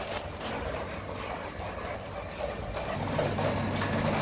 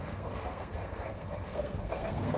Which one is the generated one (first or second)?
second